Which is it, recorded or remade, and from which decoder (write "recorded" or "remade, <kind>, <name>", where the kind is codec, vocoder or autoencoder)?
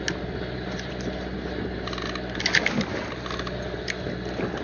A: recorded